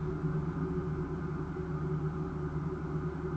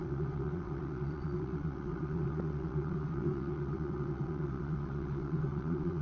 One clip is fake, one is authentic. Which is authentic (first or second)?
first